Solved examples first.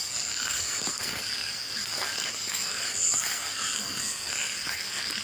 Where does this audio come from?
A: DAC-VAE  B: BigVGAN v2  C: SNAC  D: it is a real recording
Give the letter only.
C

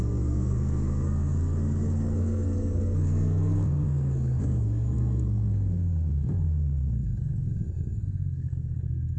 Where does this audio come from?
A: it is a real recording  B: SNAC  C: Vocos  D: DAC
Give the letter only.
B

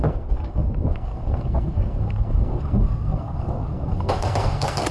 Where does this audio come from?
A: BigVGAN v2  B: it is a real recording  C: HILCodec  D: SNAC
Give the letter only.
D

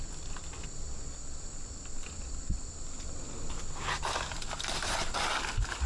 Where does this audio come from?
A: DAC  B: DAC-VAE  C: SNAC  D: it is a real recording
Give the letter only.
D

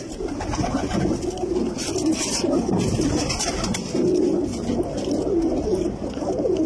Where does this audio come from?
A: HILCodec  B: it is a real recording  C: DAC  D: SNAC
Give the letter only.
B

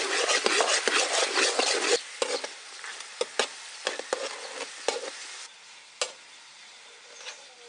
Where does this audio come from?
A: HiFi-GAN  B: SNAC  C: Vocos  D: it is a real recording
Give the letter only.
D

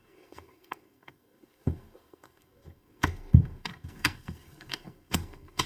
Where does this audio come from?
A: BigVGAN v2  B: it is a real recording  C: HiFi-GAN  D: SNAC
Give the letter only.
D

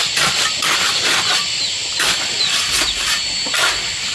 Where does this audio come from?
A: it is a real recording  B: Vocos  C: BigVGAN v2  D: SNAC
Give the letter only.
A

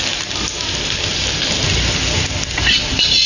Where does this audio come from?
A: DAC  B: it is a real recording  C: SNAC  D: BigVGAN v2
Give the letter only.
B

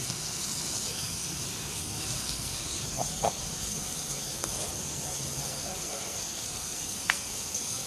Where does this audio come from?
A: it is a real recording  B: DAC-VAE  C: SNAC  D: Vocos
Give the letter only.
C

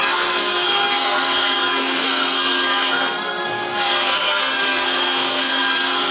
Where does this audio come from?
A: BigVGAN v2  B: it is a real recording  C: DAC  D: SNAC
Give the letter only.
D